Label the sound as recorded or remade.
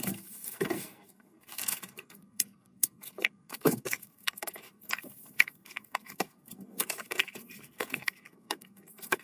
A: remade